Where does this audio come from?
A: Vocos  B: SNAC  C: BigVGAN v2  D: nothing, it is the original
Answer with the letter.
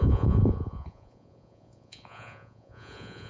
A